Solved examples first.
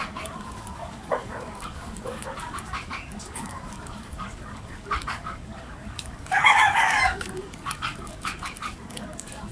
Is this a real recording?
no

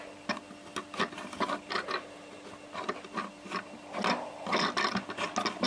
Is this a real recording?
yes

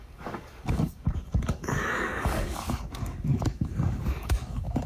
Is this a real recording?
no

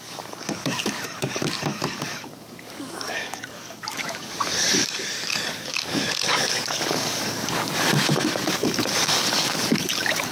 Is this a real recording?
no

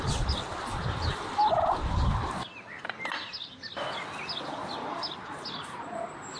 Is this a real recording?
yes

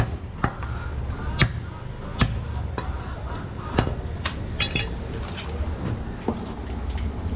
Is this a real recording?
yes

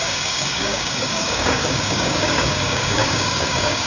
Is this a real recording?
no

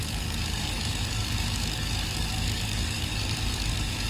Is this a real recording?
no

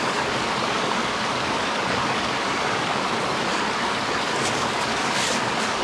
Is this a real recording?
no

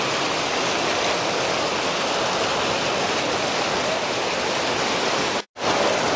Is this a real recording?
yes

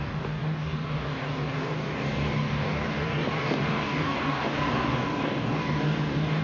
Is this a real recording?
no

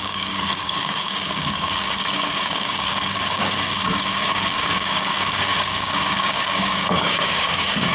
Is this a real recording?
no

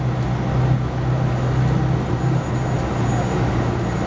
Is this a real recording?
yes